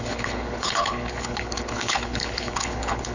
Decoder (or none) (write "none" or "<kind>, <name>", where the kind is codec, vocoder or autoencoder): codec, HILCodec